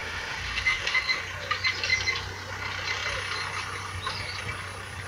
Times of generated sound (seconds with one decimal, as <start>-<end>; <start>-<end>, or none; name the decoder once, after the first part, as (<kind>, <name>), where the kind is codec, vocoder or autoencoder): 0.0-1.2 (autoencoder, DAC-VAE)